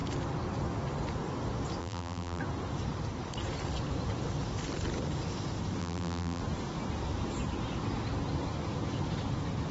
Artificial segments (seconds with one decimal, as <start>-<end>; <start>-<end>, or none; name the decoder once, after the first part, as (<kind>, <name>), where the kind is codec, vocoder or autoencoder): 1.8-2.4 (vocoder, BigVGAN v2); 5.8-6.4